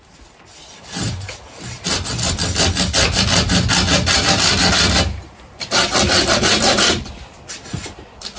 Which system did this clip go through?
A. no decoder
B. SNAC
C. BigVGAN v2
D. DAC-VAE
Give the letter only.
A